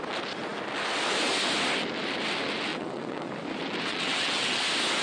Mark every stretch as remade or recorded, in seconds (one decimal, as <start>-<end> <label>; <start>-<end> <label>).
0.0-2.7 recorded; 2.7-3.3 remade; 3.3-3.9 recorded; 3.9-4.6 remade; 4.6-5.0 recorded